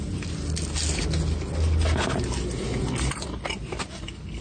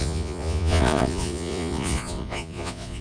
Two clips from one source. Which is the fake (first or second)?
second